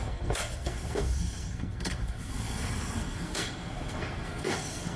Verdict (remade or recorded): remade